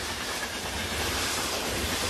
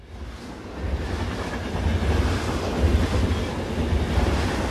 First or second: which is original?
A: second